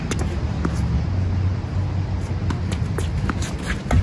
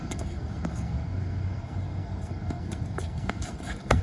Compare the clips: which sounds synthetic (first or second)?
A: second